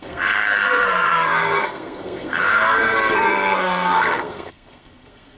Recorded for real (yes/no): no